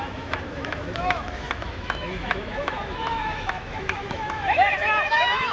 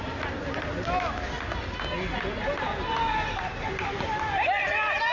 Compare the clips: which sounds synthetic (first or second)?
first